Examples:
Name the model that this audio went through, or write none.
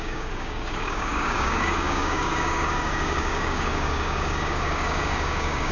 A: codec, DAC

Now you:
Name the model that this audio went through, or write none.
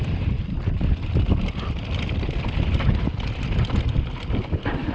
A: none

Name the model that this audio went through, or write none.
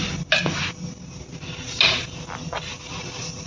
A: none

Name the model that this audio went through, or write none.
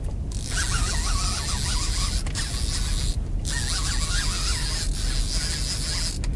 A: none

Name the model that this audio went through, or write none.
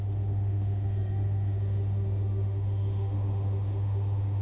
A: autoencoder, DAC-VAE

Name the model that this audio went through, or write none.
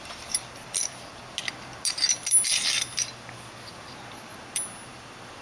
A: none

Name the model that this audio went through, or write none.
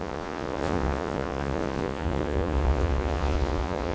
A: vocoder, Vocos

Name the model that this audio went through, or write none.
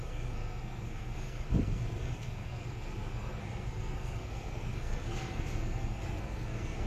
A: codec, SNAC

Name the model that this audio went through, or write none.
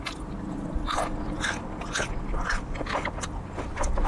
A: none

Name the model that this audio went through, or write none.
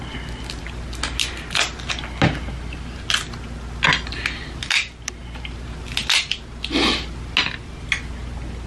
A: none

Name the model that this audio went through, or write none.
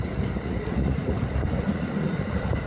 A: vocoder, Vocos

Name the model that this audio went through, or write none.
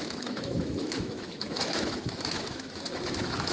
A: autoencoder, DAC-VAE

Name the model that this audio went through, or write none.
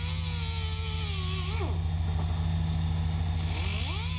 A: none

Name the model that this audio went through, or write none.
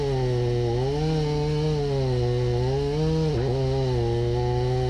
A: none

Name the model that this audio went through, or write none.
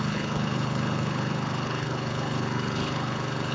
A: codec, HILCodec